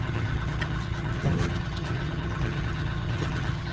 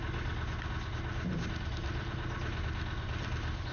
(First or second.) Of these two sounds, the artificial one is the first